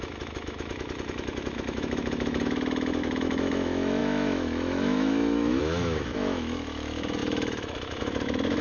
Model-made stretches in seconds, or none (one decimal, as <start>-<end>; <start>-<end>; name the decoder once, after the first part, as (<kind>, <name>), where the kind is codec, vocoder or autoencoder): 0.0-8.6 (autoencoder, DAC-VAE)